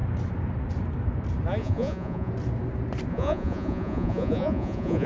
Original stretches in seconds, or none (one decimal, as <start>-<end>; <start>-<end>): 0.0-1.6; 2.3-3.1